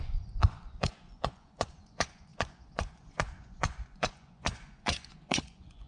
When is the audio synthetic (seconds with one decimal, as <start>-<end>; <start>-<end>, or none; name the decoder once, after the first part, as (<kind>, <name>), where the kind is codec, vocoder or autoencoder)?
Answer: 0.0-5.9 (vocoder, Vocos)